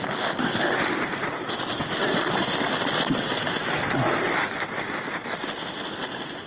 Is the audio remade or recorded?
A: recorded